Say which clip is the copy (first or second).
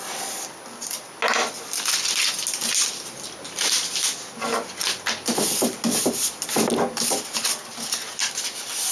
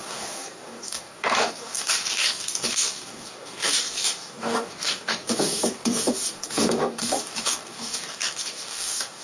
second